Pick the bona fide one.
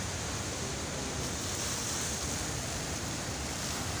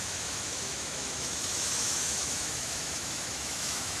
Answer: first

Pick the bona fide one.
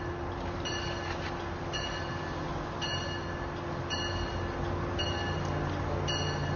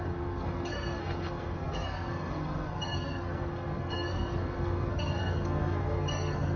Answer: first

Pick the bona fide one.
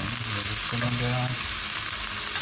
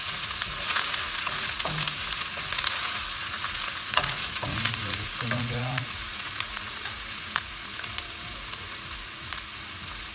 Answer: first